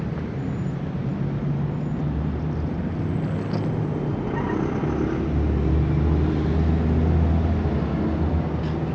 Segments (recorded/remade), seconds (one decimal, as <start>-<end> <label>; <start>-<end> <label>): 0.0-8.9 recorded